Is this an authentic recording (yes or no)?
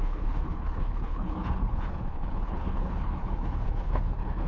no